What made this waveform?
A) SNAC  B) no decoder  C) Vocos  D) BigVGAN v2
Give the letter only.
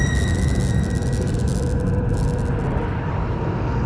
B